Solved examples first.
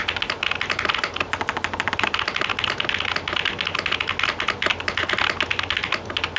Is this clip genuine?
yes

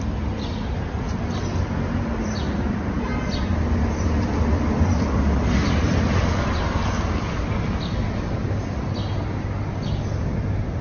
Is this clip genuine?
yes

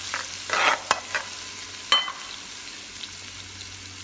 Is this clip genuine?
yes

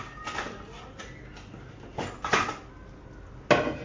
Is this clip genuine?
yes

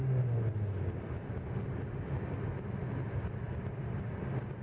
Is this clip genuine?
yes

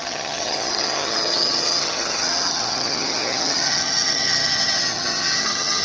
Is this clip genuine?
no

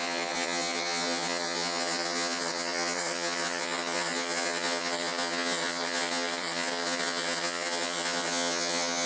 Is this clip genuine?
no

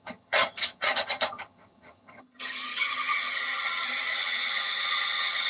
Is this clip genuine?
no